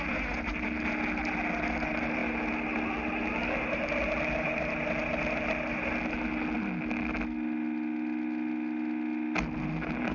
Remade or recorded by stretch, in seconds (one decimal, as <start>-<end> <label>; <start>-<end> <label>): 0.0-10.1 recorded